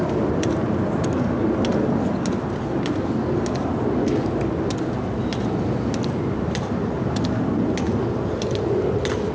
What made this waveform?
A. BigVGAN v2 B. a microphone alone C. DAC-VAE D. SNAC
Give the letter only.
B